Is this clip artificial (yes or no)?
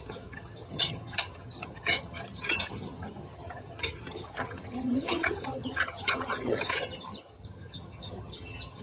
yes